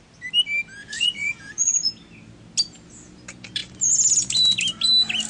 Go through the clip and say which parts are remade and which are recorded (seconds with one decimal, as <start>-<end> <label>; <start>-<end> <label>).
0.0-0.8 recorded; 0.8-1.9 remade; 1.9-5.3 recorded

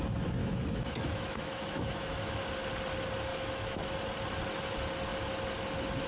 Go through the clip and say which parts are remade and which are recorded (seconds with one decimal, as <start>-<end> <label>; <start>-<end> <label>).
0.0-0.4 recorded; 0.4-2.4 remade; 2.4-3.3 recorded; 3.3-4.0 remade; 4.0-6.1 recorded

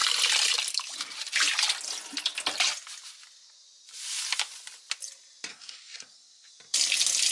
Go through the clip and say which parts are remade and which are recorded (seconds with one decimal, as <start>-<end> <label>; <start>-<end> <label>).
0.0-5.5 recorded; 5.5-6.5 remade; 6.5-7.3 recorded

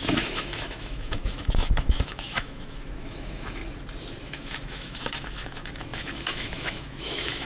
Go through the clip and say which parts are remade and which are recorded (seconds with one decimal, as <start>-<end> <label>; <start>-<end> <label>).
0.0-3.6 remade; 3.6-4.2 recorded; 4.2-7.5 remade

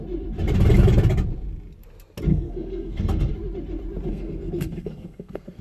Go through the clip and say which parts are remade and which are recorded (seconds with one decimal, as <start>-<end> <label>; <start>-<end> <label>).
0.0-2.3 recorded; 2.3-3.3 remade; 3.3-4.1 recorded; 4.1-5.6 remade

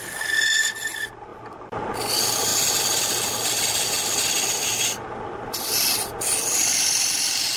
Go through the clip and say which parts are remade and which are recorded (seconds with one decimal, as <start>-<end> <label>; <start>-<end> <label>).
0.0-7.6 recorded

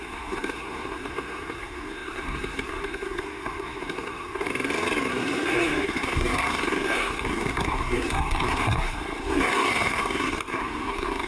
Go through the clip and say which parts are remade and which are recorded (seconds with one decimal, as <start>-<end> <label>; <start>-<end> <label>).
0.0-4.5 remade; 4.5-5.1 recorded; 5.1-11.3 remade